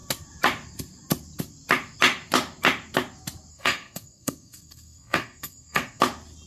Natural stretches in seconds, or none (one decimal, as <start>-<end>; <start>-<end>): 0.0-3.5; 6.0-6.5